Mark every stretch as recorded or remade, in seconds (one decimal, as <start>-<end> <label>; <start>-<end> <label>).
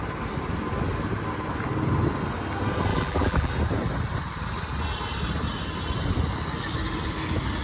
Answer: 0.0-2.9 recorded; 2.9-3.5 remade; 3.5-7.6 recorded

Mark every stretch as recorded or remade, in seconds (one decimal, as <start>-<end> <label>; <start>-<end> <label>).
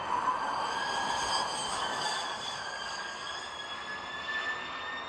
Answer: 0.0-1.6 recorded; 1.6-3.4 remade; 3.4-5.1 recorded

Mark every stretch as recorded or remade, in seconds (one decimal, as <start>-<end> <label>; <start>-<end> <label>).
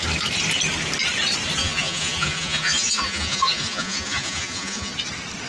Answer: 0.0-1.6 recorded; 1.6-4.9 remade; 4.9-5.5 recorded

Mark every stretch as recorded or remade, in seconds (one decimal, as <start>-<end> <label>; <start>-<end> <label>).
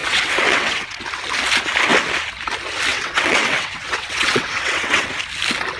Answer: 0.0-1.0 remade; 1.0-2.9 recorded; 2.9-5.1 remade; 5.1-5.8 recorded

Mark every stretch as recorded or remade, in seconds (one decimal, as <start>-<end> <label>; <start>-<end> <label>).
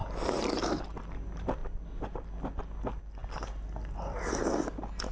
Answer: 0.0-0.8 remade; 0.8-1.6 recorded; 1.6-2.3 remade; 2.3-5.1 recorded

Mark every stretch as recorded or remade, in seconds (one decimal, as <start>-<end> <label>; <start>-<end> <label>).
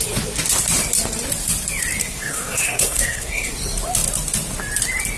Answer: 0.0-2.0 recorded; 2.0-3.5 remade; 3.5-5.2 recorded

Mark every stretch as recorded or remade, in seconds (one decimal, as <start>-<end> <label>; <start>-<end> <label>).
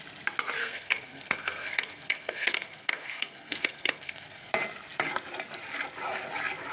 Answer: 0.0-0.6 recorded; 0.6-4.5 remade; 4.5-6.7 recorded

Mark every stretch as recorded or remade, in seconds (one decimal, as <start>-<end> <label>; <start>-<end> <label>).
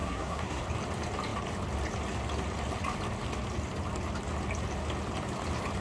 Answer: 0.0-0.6 remade; 0.6-5.8 recorded